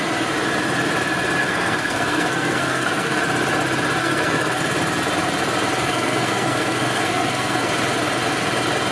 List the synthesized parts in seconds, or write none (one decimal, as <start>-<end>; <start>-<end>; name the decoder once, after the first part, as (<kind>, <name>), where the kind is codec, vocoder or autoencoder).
1.4-3.2 (codec, SNAC); 4.0-4.6; 5.8-7.7